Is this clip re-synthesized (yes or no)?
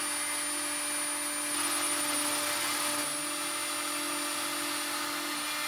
no